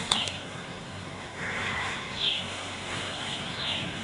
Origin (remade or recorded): remade